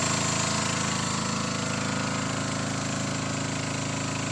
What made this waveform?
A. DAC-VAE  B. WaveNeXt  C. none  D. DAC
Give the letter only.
C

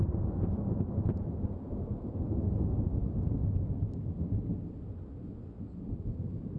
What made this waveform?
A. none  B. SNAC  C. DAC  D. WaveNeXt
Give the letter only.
A